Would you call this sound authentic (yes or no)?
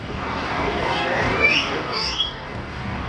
no